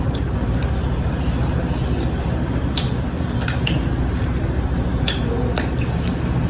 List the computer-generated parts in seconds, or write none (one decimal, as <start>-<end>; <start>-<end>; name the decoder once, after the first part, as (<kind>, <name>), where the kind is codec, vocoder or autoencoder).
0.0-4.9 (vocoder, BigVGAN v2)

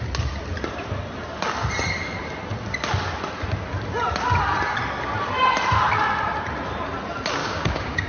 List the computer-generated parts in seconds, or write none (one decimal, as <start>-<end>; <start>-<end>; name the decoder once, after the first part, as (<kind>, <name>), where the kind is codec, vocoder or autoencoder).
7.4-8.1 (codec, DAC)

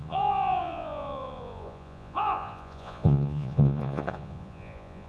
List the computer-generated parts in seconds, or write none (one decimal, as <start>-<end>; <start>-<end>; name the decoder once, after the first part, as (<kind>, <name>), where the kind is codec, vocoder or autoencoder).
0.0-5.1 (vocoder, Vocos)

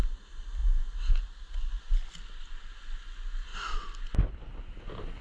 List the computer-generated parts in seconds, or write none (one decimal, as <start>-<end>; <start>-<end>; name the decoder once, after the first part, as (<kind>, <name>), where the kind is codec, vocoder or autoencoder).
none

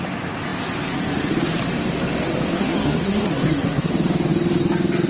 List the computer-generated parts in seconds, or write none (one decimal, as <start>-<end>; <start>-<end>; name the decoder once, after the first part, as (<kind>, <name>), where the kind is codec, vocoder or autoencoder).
2.5-3.9 (codec, SNAC)